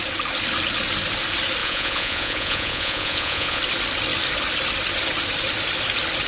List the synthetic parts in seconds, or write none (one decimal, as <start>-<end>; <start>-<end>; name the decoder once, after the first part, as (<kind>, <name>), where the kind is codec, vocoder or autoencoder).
1.6-3.6 (vocoder, Vocos)